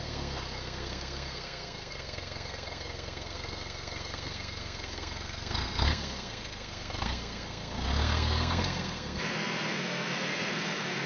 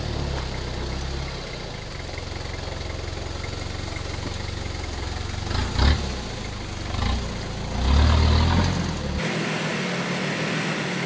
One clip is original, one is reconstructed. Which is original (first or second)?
second